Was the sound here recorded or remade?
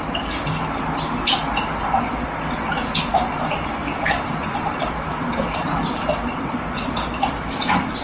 recorded